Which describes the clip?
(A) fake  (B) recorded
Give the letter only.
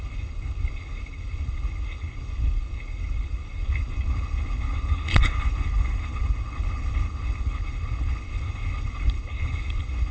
A